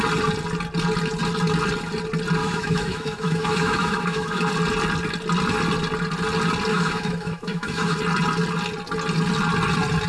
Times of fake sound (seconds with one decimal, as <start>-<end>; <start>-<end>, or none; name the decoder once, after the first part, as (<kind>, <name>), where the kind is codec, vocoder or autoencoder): 2.4-4.5 (autoencoder, DAC-VAE); 6.7-8.0